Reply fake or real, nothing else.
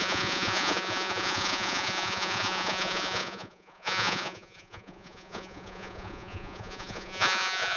fake